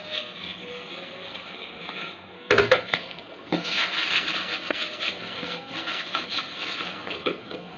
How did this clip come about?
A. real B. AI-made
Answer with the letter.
B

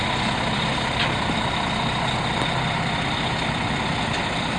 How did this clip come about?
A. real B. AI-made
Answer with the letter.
A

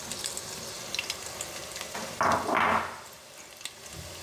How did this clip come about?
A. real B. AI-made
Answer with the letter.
A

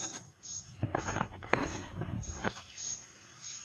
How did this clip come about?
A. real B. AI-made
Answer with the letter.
B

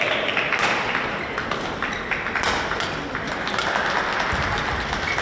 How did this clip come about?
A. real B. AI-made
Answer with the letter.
A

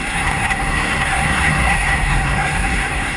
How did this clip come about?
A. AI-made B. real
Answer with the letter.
A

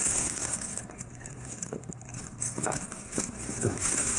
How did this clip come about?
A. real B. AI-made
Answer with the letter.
B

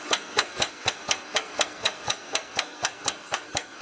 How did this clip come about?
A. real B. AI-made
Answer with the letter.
B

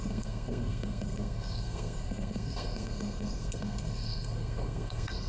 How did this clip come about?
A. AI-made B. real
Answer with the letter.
A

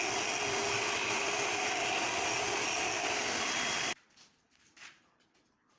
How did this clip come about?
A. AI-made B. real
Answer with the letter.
B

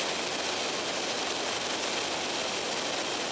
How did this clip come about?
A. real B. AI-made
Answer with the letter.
A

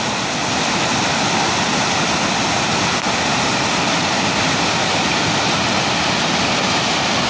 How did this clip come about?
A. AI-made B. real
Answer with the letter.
B